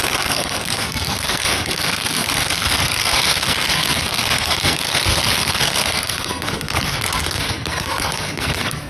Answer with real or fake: fake